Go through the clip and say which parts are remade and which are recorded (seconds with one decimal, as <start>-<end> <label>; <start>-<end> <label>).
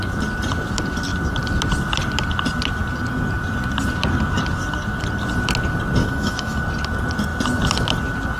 0.0-6.0 recorded; 6.0-6.6 remade; 6.6-8.4 recorded